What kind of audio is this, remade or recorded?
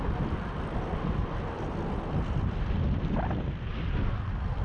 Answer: recorded